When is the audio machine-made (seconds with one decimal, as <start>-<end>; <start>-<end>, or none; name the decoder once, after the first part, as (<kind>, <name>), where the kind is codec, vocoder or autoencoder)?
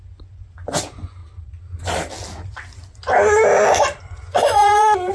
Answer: 0.0-1.2 (vocoder, Vocos); 4.0-5.1